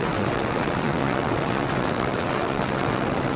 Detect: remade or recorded remade